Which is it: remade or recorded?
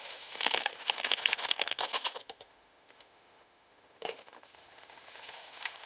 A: remade